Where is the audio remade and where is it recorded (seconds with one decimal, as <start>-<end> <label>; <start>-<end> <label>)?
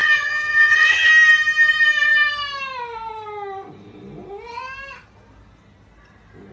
0.0-1.1 remade; 1.1-6.5 recorded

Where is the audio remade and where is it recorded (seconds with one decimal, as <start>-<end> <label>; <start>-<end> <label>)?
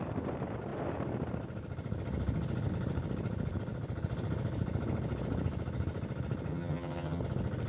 0.0-6.5 recorded; 6.5-7.2 remade; 7.2-7.7 recorded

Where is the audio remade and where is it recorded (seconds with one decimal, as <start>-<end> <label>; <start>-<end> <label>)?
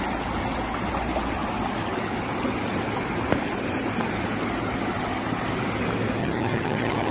0.0-6.2 recorded; 6.2-7.1 remade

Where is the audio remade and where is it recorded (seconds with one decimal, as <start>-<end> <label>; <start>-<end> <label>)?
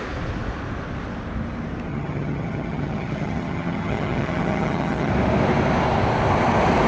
0.0-1.9 recorded; 1.9-5.1 remade; 5.1-6.9 recorded